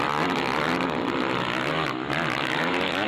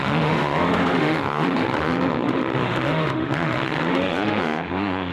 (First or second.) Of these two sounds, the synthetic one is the second